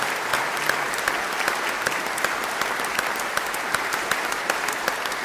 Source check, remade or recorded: recorded